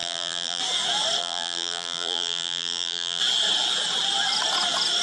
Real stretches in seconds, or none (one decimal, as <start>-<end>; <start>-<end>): 0.6-1.2; 3.2-5.0